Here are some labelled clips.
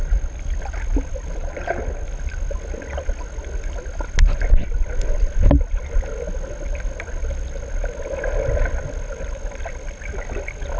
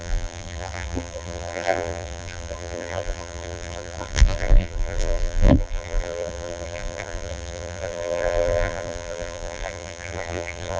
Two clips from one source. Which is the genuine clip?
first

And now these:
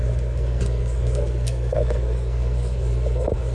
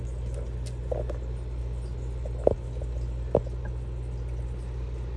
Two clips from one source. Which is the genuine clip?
second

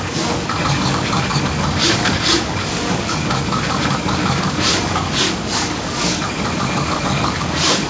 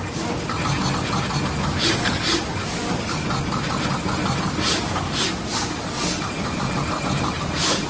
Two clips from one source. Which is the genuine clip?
second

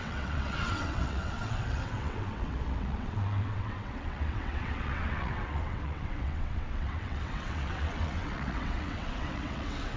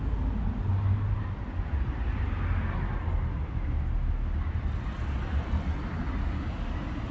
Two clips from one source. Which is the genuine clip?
second